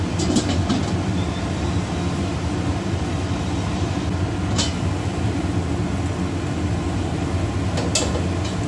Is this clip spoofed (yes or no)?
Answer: no